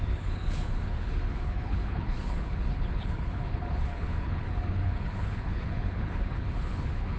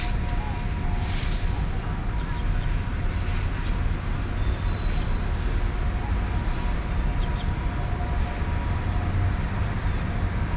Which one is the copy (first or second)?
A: first